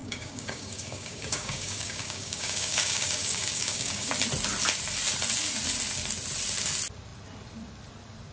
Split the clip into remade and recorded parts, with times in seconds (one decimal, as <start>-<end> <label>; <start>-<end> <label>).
0.0-4.1 remade; 4.1-8.3 recorded